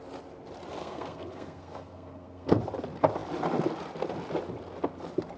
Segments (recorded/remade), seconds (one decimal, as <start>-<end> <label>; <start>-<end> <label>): 0.0-0.8 recorded; 0.8-2.6 remade; 2.6-5.4 recorded